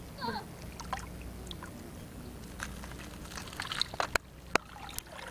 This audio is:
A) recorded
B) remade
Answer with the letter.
A